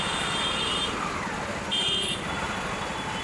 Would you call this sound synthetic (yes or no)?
no